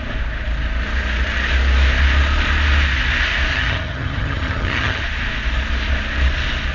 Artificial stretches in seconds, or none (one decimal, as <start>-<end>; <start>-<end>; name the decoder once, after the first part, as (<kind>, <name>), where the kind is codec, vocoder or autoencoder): 3.5-5.0 (vocoder, HiFi-GAN)